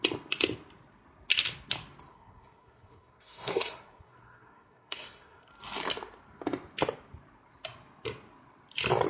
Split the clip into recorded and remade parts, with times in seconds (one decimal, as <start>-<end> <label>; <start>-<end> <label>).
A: 0.0-2.1 recorded; 2.1-5.5 remade; 5.5-9.1 recorded